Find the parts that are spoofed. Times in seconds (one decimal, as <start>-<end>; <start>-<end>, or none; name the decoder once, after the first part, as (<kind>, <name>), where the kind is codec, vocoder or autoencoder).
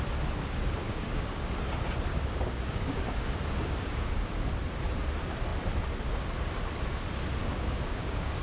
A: 0.8-1.4 (codec, DAC); 2.1-4.5; 7.4-8.4